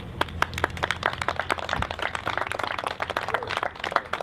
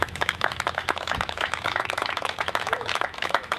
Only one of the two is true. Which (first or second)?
first